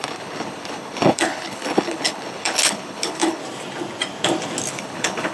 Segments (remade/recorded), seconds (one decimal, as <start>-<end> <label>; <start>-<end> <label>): 0.0-3.4 remade; 3.4-4.7 recorded; 4.7-5.3 remade

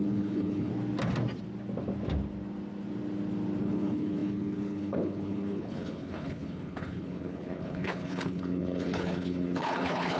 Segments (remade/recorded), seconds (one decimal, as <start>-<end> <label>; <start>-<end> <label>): 0.0-0.7 remade; 0.7-3.6 recorded; 3.6-10.2 remade

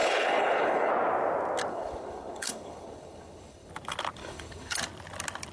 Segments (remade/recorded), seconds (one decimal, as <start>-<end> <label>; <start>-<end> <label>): 0.0-0.9 remade; 0.9-1.7 recorded; 1.7-3.7 remade; 3.7-4.2 recorded; 4.2-4.8 remade; 4.8-5.5 recorded

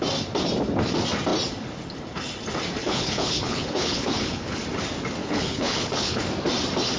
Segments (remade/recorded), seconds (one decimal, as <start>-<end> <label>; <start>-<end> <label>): 0.0-2.8 recorded; 2.8-4.6 remade; 4.6-5.2 recorded; 5.2-6.2 remade; 6.2-7.0 recorded